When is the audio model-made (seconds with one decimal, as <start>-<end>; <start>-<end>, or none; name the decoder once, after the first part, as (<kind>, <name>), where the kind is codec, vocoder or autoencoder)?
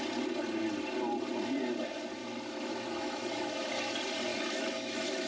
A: 2.2-3.7 (autoencoder, DAC-VAE); 4.3-5.3